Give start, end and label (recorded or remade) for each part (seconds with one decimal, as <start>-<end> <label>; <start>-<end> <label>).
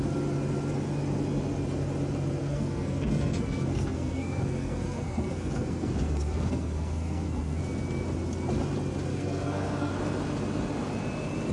0.0-2.4 recorded; 2.4-7.6 remade; 7.6-9.1 recorded; 9.1-9.9 remade; 9.9-11.5 recorded